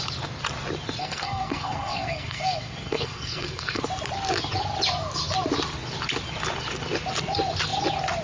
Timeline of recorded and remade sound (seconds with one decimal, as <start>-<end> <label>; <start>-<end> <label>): 0.0-1.0 recorded; 1.0-3.8 remade; 3.8-8.2 recorded